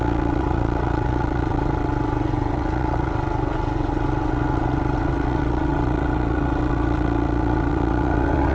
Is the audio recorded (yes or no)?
no